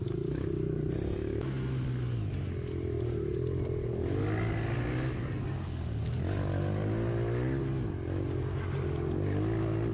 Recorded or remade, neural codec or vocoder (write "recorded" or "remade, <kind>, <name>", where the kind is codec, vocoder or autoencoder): recorded